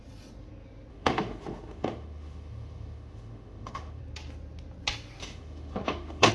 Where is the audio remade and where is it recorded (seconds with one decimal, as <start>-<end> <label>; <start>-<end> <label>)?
0.0-0.9 recorded; 0.9-4.0 remade; 4.0-5.2 recorded; 5.2-6.3 remade